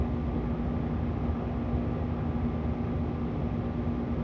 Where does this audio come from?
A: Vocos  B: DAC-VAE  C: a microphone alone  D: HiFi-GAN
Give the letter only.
C